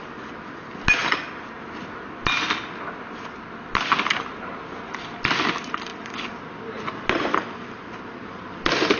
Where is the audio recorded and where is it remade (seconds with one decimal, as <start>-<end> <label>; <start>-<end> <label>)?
0.0-9.0 recorded